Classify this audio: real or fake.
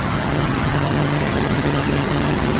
fake